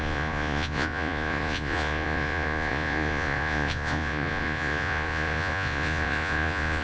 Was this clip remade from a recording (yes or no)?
yes